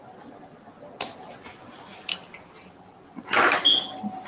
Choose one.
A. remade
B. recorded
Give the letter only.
B